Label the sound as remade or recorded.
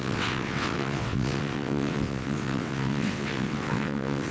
remade